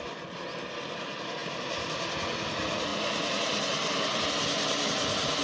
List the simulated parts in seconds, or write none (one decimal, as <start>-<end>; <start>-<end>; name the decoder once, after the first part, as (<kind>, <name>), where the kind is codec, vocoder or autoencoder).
none